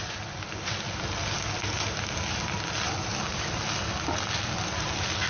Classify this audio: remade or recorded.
recorded